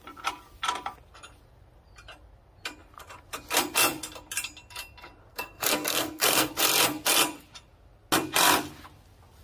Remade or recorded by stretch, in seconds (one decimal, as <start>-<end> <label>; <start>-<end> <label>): 0.0-5.3 recorded; 5.3-6.5 remade; 6.5-9.4 recorded